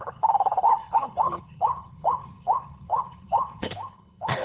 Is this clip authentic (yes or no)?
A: no